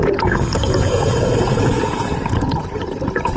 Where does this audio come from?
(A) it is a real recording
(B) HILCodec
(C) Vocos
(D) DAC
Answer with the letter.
C